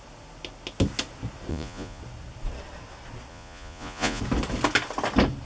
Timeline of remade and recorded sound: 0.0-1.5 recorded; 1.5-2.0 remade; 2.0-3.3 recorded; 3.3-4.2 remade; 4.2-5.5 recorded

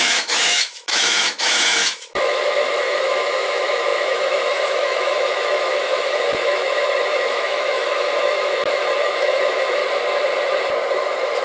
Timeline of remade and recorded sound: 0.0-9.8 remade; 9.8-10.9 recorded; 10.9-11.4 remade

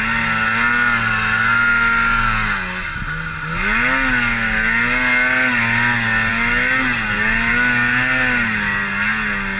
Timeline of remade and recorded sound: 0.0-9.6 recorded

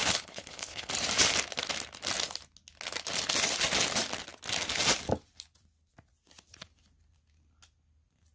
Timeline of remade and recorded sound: 0.0-0.9 remade; 0.9-8.3 recorded